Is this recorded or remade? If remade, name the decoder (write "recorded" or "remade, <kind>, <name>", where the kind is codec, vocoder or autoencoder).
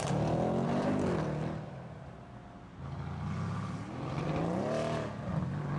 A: recorded